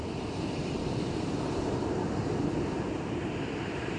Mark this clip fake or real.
real